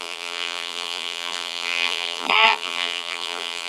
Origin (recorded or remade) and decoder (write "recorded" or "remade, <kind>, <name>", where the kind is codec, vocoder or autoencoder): remade, vocoder, BigVGAN v2